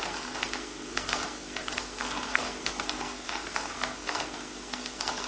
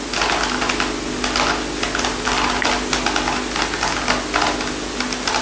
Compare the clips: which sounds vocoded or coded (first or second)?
first